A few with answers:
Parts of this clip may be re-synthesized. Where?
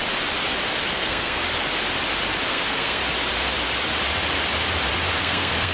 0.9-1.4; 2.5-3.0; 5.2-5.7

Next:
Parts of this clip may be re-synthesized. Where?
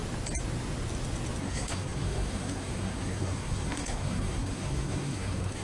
1.4-5.6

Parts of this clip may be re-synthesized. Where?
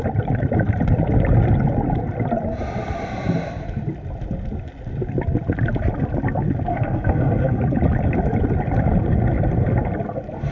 6.7-7.6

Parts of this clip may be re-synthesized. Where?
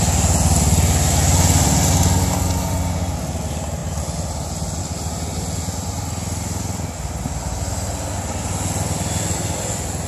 none